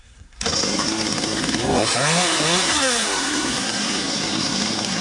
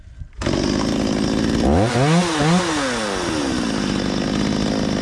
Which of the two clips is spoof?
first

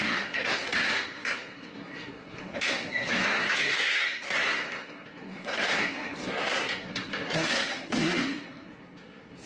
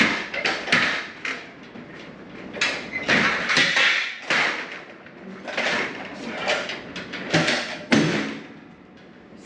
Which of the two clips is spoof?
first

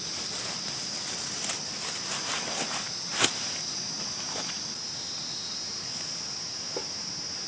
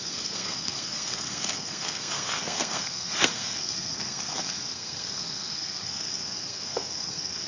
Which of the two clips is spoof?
second